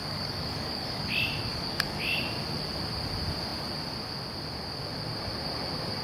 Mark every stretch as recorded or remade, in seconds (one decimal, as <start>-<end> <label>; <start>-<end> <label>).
0.0-1.1 remade; 1.1-1.5 recorded; 1.5-2.0 remade; 2.0-6.0 recorded